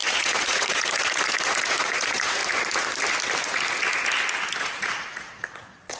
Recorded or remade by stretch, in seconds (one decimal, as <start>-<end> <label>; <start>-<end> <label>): 0.0-2.4 remade; 2.4-4.6 recorded; 4.6-6.0 remade